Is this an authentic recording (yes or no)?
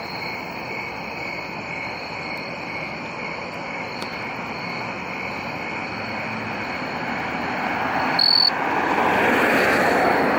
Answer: yes